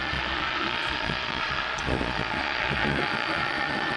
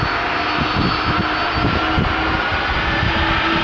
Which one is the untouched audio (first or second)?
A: second